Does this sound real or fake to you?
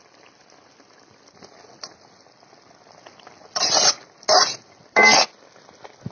real